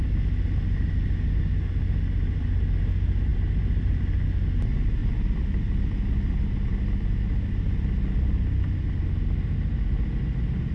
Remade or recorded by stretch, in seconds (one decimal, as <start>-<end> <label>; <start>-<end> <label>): 0.0-3.3 recorded; 3.3-4.0 remade; 4.0-5.0 recorded; 5.0-5.6 remade; 5.6-6.7 recorded; 6.7-7.5 remade; 7.5-10.7 recorded